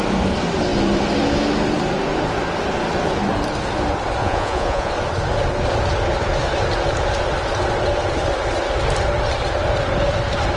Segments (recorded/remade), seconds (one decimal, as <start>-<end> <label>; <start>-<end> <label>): 0.0-4.2 recorded; 4.2-4.9 remade; 4.9-10.6 recorded